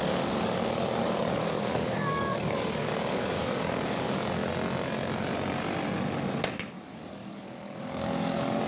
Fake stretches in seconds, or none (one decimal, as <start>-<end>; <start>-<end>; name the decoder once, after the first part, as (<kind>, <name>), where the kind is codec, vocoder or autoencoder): 0.0-4.4 (codec, DAC); 6.8-8.7